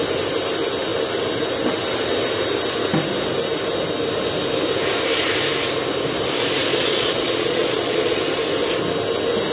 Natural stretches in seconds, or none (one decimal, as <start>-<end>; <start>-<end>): 0.0-6.7; 8.2-9.5

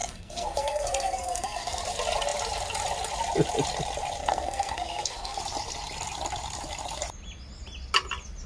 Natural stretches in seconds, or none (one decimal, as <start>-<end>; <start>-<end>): 1.8-4.2; 5.4-8.5

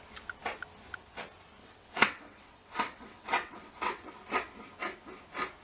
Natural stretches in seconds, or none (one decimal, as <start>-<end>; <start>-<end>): 0.0-1.6; 4.1-5.6

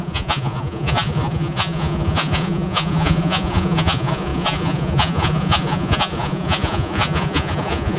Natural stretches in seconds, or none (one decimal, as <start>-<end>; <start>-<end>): none

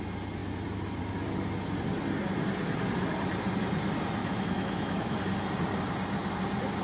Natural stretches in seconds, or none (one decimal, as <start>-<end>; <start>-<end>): 0.0-4.2; 5.2-6.8

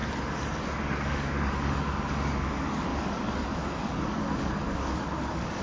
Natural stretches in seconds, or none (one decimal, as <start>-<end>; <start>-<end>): 0.0-0.6

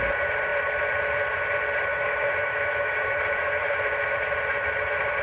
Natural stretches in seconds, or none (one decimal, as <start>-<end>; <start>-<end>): 0.0-1.9; 3.8-5.2